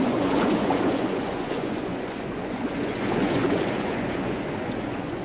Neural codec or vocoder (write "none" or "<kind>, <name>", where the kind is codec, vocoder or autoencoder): vocoder, Vocos